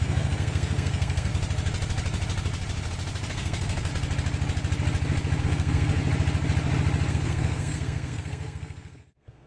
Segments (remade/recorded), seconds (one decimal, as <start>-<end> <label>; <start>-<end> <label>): 0.0-1.3 remade; 1.3-3.3 recorded; 3.3-3.9 remade; 3.9-5.4 recorded; 5.4-6.0 remade; 6.0-7.1 recorded; 7.1-9.5 remade